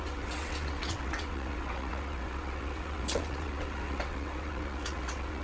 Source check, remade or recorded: remade